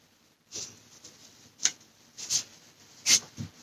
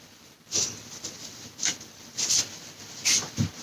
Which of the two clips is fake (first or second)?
second